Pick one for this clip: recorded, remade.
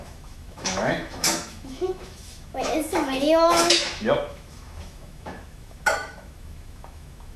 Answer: remade